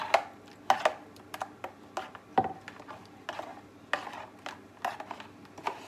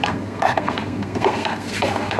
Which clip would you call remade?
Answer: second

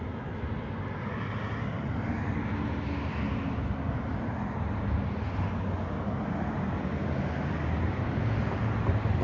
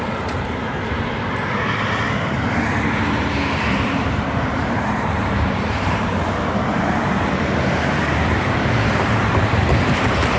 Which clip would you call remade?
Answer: second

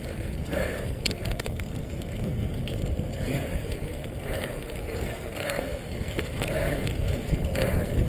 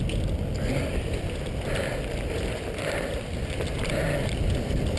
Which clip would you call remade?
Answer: first